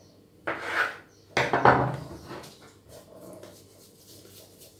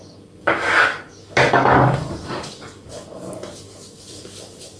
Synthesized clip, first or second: second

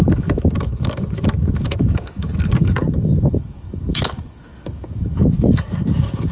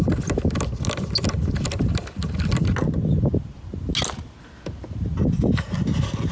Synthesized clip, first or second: first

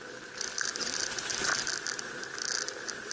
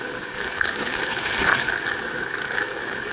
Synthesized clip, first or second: second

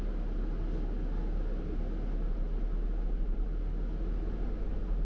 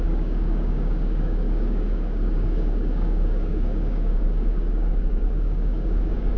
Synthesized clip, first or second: second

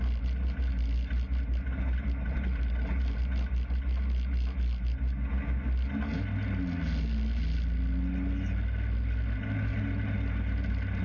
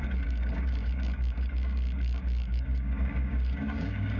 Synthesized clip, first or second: second